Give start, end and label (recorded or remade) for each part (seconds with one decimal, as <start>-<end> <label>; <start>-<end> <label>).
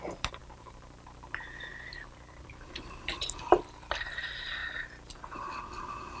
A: 0.0-4.6 remade; 4.6-6.2 recorded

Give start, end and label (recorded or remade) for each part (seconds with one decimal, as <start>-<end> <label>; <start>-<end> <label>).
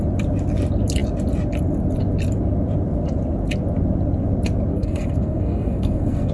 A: 0.0-4.7 recorded; 4.7-6.3 remade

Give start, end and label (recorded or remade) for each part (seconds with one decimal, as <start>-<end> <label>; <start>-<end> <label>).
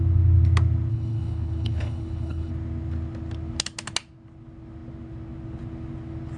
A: 0.0-0.9 recorded; 0.9-2.5 remade; 2.5-6.4 recorded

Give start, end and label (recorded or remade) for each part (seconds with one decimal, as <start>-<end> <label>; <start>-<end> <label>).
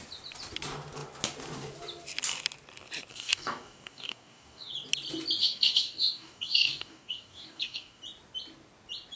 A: 0.0-3.1 recorded; 3.1-4.7 remade; 4.7-5.4 recorded; 5.4-8.0 remade; 8.0-9.2 recorded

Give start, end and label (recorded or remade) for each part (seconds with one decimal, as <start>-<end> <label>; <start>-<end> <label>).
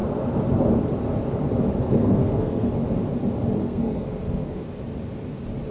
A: 0.0-1.8 recorded; 1.8-2.7 remade; 2.7-3.6 recorded; 3.6-4.6 remade; 4.6-5.7 recorded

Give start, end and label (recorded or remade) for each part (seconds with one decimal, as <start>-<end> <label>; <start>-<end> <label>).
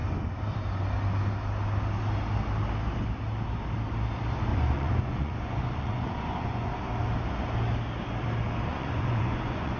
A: 0.0-4.5 recorded; 4.5-6.7 remade; 6.7-8.7 recorded; 8.7-9.8 remade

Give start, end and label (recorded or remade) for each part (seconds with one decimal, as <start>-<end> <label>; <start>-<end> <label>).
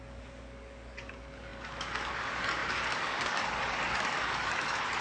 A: 0.0-5.0 remade